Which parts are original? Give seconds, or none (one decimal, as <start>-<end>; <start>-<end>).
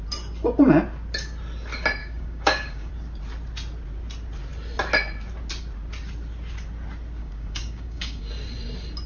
0.0-2.0; 2.9-7.2; 8.3-9.1